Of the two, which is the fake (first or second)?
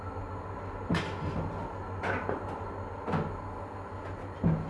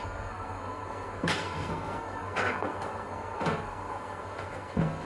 second